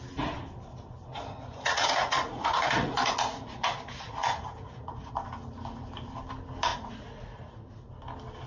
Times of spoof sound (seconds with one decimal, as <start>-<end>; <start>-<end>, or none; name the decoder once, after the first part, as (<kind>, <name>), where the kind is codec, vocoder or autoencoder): 1.1-5.1 (vocoder, Vocos); 6.7-7.9